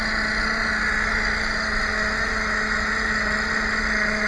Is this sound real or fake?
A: real